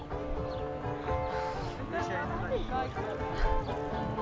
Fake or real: real